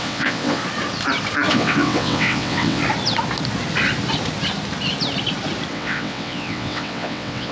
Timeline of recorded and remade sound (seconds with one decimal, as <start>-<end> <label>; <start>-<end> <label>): 0.0-0.6 remade; 0.6-1.5 recorded; 1.5-2.8 remade; 2.8-5.7 recorded; 5.7-7.5 remade